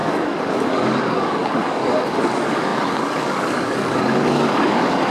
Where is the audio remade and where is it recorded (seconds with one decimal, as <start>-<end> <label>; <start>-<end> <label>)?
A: 0.0-5.1 remade